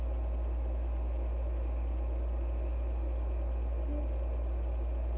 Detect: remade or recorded recorded